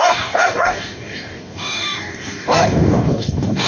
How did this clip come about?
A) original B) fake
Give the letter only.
B